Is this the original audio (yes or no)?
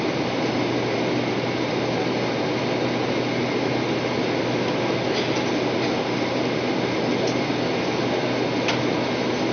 yes